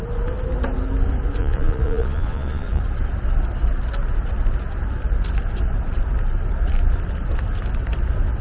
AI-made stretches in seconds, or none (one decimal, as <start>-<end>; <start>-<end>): 1.4-2.8